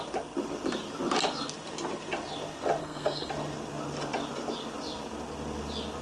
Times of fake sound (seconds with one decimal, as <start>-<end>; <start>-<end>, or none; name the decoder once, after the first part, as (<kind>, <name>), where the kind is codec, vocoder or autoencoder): 2.8-3.3 (codec, SNAC)